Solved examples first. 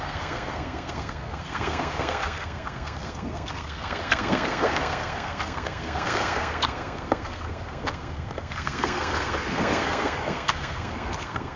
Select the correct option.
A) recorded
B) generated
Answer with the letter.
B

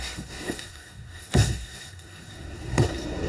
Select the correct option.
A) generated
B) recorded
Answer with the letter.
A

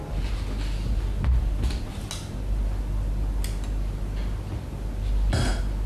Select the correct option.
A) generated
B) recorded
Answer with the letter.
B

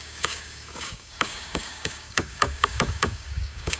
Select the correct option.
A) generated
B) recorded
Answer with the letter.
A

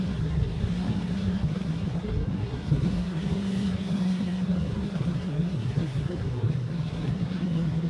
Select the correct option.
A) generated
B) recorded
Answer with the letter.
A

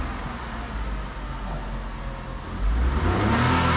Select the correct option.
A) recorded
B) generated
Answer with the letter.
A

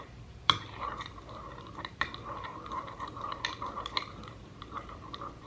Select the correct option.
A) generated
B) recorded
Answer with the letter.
A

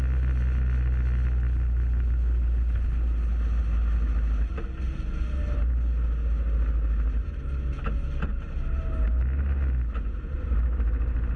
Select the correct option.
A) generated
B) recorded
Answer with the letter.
B